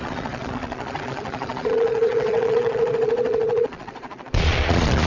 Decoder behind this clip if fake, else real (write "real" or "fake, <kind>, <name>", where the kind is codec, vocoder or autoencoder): fake, vocoder, Vocos